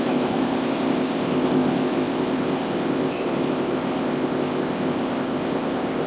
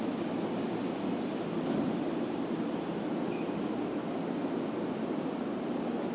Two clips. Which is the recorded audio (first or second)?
second